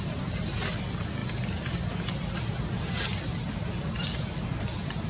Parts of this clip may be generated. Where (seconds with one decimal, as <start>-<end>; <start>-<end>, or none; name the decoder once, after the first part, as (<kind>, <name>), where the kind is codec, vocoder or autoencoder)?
1.2-2.6 (vocoder, BigVGAN v2)